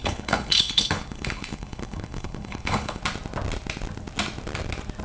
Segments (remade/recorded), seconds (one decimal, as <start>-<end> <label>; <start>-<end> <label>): 0.0-3.0 remade; 3.0-5.0 recorded